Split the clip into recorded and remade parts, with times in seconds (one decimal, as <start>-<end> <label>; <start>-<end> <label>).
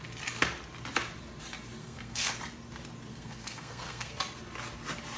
0.0-1.8 recorded; 1.8-2.3 remade; 2.3-3.1 recorded; 3.1-4.2 remade; 4.2-5.2 recorded